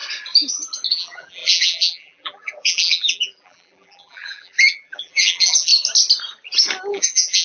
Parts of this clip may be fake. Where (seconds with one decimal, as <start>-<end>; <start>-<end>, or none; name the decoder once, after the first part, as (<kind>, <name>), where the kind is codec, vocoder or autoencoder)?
0.9-5.7 (vocoder, BigVGAN v2); 6.9-7.4